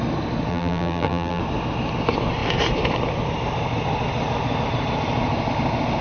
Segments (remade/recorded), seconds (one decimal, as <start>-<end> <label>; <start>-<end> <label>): 0.0-0.5 recorded; 0.5-1.4 remade; 1.4-6.0 recorded